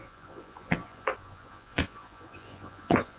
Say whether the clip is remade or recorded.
remade